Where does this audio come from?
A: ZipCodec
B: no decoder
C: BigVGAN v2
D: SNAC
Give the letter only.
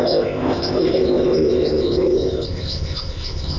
A